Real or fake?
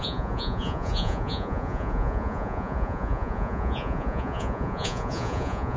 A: fake